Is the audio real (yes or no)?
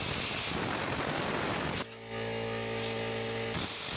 yes